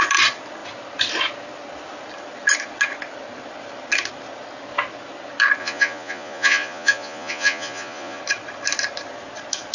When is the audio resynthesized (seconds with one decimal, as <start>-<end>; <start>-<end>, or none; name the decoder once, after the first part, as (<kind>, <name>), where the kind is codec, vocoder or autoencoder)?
5.6-8.2 (vocoder, Vocos)